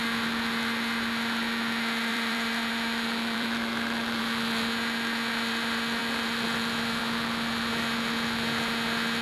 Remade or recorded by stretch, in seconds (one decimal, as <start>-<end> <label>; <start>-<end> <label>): 0.0-2.1 recorded; 2.1-4.2 remade; 4.2-6.0 recorded; 6.0-7.0 remade; 7.0-9.2 recorded